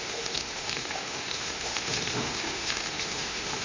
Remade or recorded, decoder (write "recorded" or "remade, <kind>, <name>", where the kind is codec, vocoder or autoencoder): remade, autoencoder, DAC-VAE